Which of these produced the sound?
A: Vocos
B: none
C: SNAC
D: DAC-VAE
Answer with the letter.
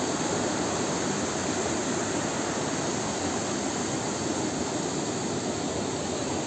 B